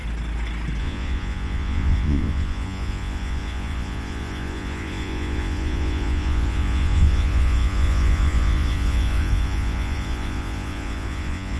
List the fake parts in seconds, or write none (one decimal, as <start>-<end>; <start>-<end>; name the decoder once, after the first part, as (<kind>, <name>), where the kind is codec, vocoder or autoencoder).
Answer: 0.8-11.6 (vocoder, Vocos)